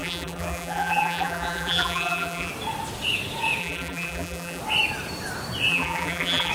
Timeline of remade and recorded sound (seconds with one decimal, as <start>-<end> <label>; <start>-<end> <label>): 0.0-2.5 remade; 2.5-3.6 recorded; 3.6-4.6 remade; 4.6-5.7 recorded; 5.7-6.5 remade